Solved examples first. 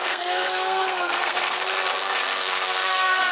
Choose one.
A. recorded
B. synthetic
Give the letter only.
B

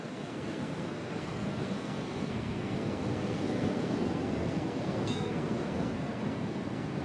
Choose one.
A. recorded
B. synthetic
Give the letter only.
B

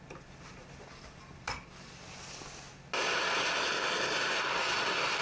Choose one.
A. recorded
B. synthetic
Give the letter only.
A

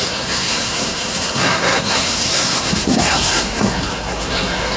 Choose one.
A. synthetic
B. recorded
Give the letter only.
A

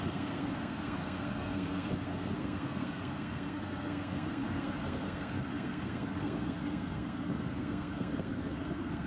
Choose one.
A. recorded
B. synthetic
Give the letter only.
B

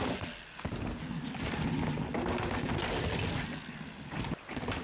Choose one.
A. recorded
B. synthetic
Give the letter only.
A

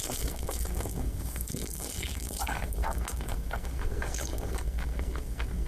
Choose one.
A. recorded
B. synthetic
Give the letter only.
B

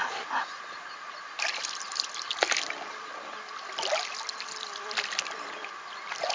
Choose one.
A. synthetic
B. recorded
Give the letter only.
B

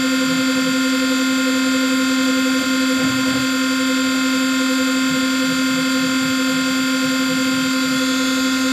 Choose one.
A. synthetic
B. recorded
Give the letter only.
B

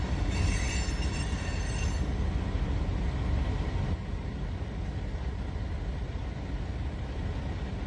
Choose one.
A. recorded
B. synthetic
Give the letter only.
A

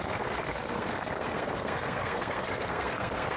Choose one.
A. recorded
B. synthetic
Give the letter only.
B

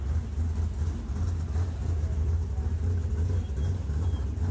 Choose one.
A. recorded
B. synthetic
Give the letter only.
A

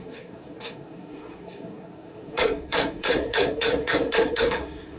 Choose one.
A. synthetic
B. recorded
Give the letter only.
A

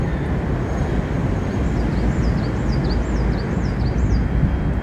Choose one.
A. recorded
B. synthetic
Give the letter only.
A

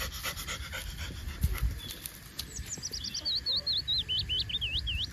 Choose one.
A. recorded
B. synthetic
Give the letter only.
A